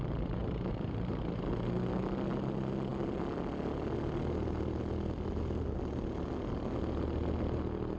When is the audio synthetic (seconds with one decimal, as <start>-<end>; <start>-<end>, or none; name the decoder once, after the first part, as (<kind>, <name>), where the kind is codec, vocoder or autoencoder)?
0.4-1.2 (vocoder, BigVGAN v2)